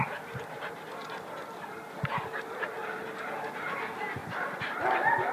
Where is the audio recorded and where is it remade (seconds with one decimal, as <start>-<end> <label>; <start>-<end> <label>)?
0.0-4.2 recorded; 4.2-4.8 remade; 4.8-5.3 recorded